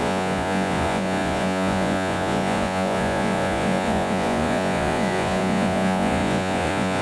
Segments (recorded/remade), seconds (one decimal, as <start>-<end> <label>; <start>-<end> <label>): 0.0-7.0 remade